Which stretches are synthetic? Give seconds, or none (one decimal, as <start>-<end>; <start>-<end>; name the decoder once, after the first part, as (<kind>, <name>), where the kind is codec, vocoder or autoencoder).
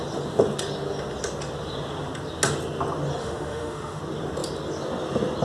3.2-4.0 (autoencoder, DAC-VAE)